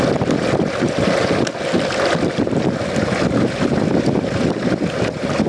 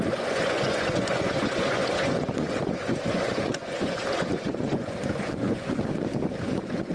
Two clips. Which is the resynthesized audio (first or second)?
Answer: second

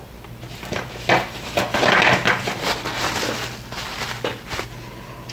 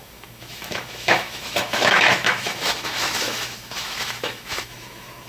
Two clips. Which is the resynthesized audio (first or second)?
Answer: second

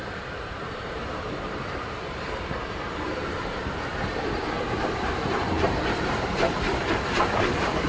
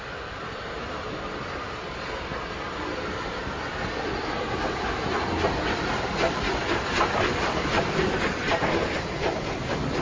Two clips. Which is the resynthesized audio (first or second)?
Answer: first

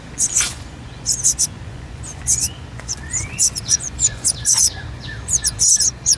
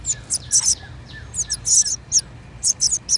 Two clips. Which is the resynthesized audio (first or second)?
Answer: first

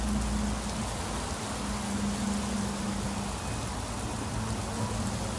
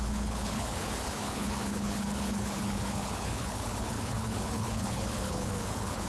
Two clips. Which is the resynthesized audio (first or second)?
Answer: second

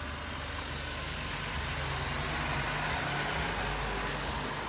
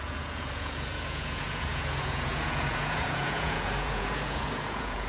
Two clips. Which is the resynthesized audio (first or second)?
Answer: second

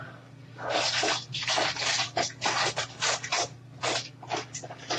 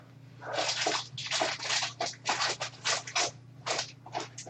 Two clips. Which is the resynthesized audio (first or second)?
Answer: first